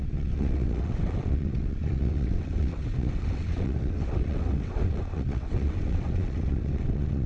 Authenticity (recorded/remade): remade